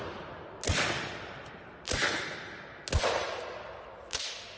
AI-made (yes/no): no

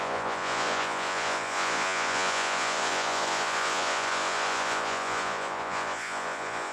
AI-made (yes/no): yes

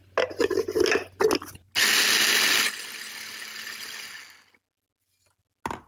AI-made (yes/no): no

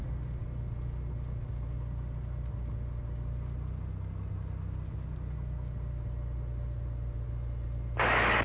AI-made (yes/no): no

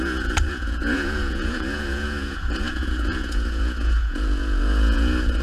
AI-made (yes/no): yes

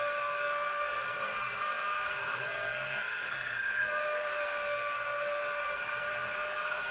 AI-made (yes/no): yes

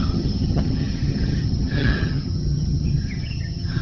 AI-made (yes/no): yes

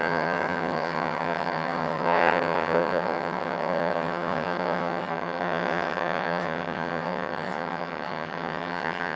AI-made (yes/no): yes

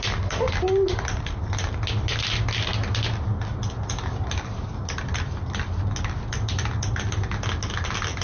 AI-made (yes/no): no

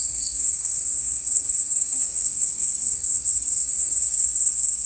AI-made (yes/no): yes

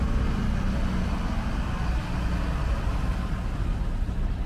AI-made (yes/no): no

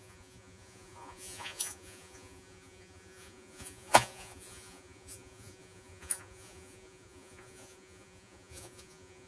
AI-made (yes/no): yes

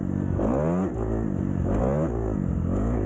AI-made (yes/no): no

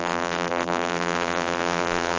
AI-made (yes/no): yes